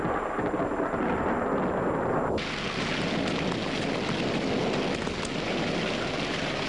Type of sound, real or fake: real